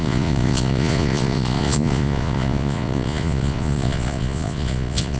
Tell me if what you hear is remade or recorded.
remade